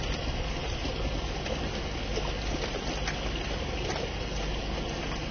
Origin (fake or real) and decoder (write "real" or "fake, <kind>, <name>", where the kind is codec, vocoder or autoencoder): real